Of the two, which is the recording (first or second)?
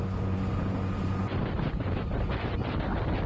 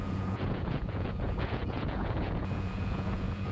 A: first